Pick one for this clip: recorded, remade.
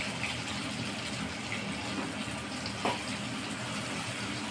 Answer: recorded